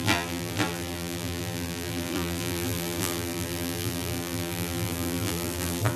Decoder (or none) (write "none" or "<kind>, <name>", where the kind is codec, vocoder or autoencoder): vocoder, BigVGAN v2